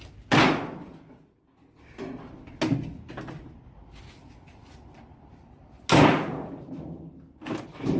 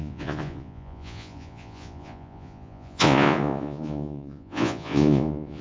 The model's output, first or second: second